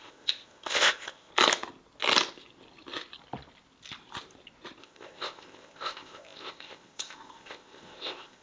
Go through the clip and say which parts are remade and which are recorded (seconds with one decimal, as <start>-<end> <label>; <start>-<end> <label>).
0.0-1.3 remade; 1.3-4.8 recorded; 4.8-8.4 remade